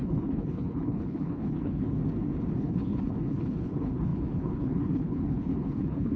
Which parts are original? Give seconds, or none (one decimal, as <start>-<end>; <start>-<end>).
2.0-2.6